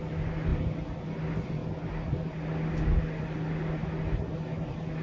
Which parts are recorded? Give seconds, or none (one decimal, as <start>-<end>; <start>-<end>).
0.0-5.0

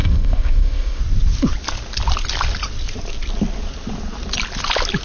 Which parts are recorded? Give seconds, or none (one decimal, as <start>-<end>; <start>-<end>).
1.0-5.0

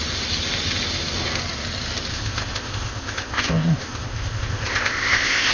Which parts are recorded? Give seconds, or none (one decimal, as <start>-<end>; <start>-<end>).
0.0-2.1

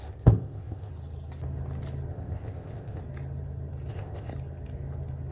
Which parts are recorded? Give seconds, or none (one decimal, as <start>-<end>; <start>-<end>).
0.9-2.1; 3.0-3.9; 4.3-5.3

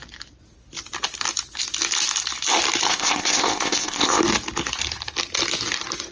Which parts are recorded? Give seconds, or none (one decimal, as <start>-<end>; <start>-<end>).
0.0-2.9; 4.2-6.1